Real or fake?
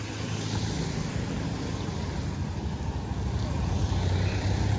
real